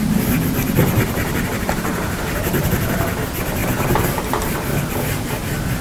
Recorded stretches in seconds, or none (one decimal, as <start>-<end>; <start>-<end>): 0.0-1.2; 3.1-3.6; 5.2-5.8